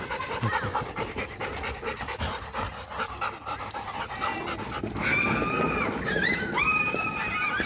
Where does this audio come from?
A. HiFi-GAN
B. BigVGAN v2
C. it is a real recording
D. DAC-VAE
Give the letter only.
C